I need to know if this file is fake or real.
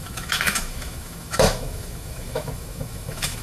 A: fake